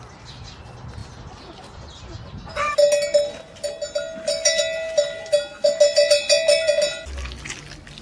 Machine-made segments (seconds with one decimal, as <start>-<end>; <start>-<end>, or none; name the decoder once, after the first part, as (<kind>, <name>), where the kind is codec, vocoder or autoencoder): none